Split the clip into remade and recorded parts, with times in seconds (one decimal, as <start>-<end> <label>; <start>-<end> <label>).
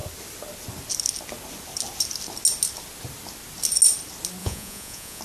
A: 0.0-4.4 recorded; 4.4-5.2 remade